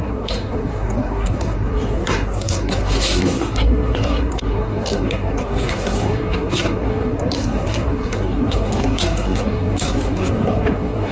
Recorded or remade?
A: remade